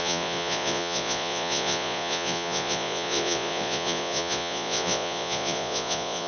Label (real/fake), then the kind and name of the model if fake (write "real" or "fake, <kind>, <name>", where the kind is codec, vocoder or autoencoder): fake, vocoder, Vocos